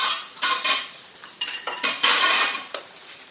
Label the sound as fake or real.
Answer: fake